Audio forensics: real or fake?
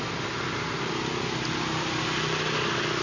real